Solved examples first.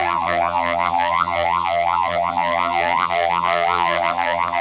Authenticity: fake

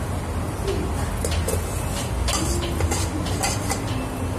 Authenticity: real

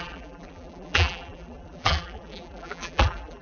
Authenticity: fake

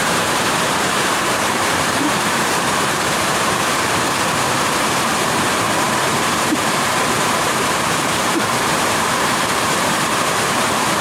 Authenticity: fake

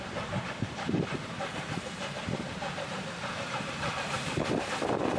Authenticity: fake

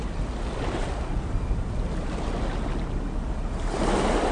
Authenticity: real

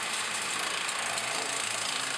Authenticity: real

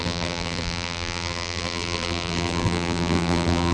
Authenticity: fake